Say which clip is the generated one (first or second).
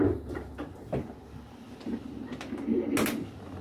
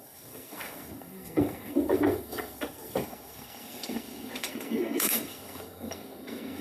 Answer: second